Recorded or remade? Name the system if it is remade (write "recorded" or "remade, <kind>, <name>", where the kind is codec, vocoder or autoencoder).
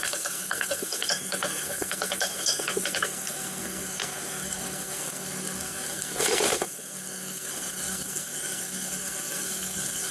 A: remade, codec, SNAC